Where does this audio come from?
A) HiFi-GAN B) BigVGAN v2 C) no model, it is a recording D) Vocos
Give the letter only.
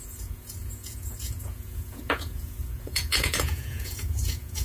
D